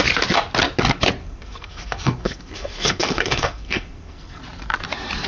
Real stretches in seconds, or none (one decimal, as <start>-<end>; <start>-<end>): 0.0-1.2; 4.4-5.3